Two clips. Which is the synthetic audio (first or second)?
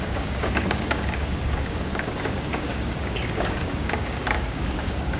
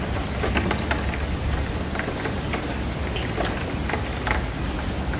first